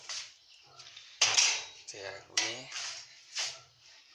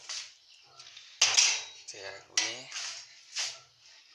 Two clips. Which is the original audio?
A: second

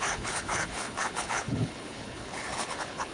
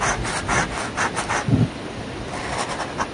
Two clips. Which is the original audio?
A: second